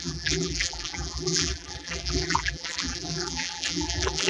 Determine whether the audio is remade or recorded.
remade